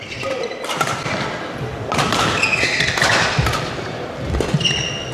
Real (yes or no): yes